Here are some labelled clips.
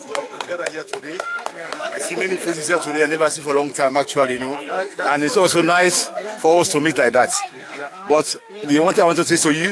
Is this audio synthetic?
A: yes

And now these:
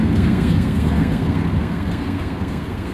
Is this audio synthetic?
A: yes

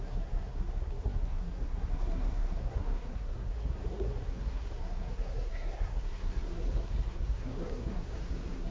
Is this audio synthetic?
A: yes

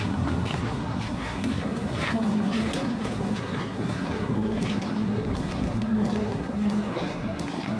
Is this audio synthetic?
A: yes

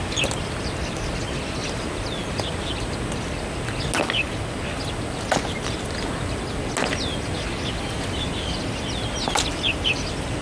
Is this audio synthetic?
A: no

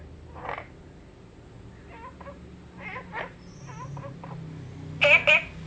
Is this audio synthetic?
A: no